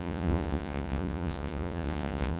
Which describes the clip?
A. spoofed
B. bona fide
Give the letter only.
A